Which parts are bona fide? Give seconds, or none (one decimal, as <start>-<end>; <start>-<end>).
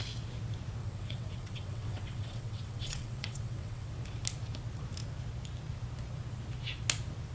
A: 0.0-0.8; 3.9-7.3